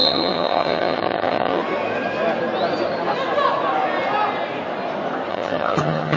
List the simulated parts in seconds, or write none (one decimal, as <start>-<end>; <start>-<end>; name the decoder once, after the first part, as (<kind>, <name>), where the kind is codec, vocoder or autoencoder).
0.0-1.6 (vocoder, HiFi-GAN); 5.3-6.2